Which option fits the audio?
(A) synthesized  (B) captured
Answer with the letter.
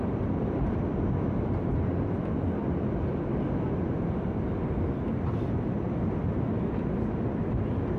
A